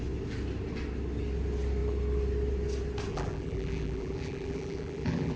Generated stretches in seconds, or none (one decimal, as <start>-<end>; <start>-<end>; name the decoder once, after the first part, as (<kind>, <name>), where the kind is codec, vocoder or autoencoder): 3.1-5.4 (vocoder, BigVGAN v2)